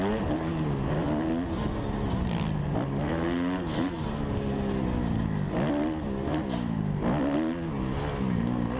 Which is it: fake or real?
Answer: real